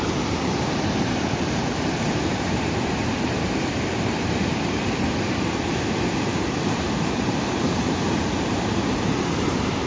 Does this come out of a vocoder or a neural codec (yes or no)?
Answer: yes